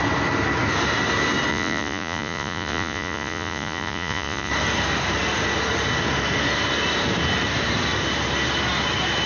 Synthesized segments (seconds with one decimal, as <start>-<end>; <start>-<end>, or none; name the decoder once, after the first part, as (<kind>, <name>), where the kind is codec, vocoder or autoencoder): 1.5-4.5 (vocoder, Vocos)

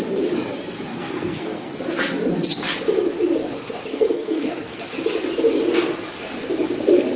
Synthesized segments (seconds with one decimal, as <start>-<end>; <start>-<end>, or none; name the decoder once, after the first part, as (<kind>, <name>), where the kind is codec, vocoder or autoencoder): 0.9-1.7 (codec, SNAC); 3.9-4.8

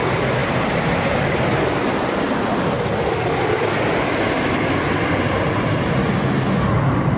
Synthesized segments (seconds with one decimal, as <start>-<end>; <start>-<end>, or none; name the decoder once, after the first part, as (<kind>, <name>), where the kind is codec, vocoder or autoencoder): none

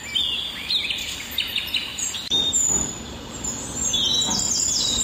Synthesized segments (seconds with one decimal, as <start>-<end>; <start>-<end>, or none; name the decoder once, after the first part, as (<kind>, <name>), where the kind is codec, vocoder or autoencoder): 1.9-3.3 (vocoder, BigVGAN v2)

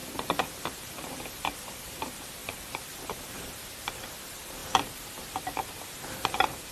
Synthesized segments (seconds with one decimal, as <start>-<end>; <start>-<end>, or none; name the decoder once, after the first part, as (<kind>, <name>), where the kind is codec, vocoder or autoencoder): 0.8-6.7 (vocoder, BigVGAN v2)

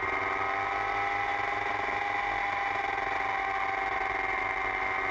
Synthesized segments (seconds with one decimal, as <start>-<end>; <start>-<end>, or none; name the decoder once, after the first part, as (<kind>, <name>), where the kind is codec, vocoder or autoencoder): none